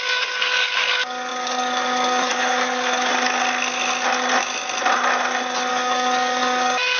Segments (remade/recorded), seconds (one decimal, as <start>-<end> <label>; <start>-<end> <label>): 0.0-3.1 remade; 3.1-5.7 recorded; 5.7-7.0 remade